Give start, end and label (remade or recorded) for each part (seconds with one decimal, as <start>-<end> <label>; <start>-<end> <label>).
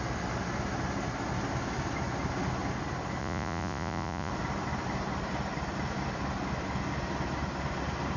0.0-3.2 recorded; 3.2-4.3 remade; 4.3-8.2 recorded